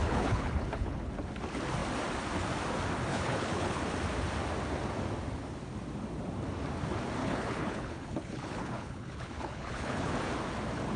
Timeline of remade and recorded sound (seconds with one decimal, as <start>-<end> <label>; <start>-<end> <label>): 0.0-1.1 remade; 1.1-3.1 recorded; 3.1-3.8 remade; 3.8-7.2 recorded; 7.2-10.1 remade; 10.1-11.0 recorded